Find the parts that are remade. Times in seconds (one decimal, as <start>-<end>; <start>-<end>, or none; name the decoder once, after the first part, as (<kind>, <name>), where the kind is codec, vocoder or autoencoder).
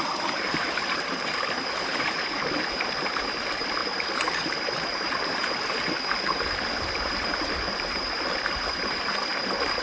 0.0-9.8 (vocoder, BigVGAN v2)